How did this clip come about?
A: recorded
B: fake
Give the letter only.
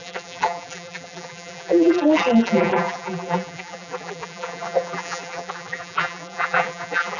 B